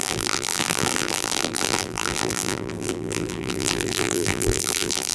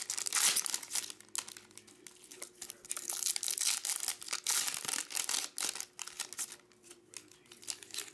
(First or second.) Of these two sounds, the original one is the second